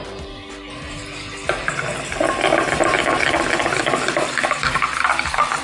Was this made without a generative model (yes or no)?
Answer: yes